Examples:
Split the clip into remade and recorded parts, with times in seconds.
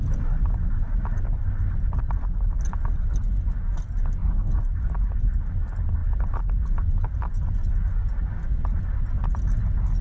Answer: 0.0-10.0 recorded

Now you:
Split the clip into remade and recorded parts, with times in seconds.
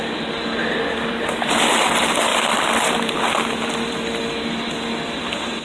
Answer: 0.0-5.6 recorded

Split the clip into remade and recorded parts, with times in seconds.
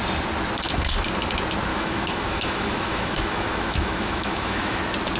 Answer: 0.0-1.7 recorded; 1.7-4.8 remade; 4.8-5.2 recorded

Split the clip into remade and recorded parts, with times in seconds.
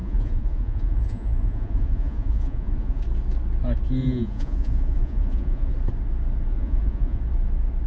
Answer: 0.0-3.0 remade; 3.0-4.0 recorded; 4.0-5.7 remade; 5.7-6.5 recorded; 6.5-7.2 remade; 7.2-7.9 recorded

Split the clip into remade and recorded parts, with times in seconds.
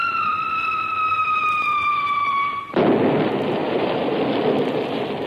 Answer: 0.0-0.5 remade; 0.5-1.2 recorded; 1.2-2.7 remade; 2.7-3.6 recorded; 3.6-4.2 remade; 4.2-5.3 recorded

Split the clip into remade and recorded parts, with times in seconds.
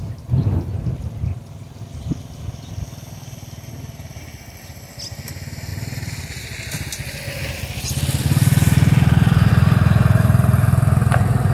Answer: 0.0-5.7 recorded; 5.7-9.5 remade; 9.5-11.5 recorded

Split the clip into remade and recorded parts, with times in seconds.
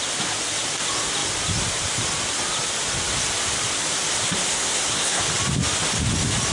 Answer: 0.0-4.5 recorded; 4.5-5.2 remade; 5.2-6.5 recorded